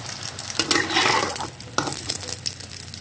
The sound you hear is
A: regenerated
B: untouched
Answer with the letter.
B